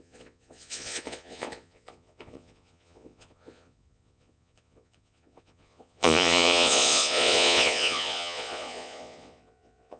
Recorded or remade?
remade